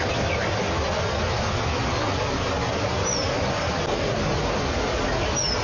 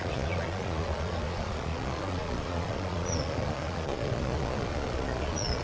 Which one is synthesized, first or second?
second